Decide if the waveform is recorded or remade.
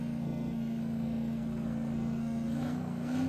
remade